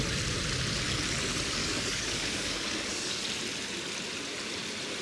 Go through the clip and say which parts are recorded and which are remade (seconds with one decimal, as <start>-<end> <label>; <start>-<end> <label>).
0.0-1.6 recorded; 1.6-3.2 remade; 3.2-5.0 recorded